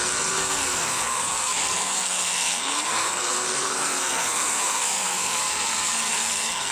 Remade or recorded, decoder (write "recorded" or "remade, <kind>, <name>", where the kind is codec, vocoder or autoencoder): remade, codec, SNAC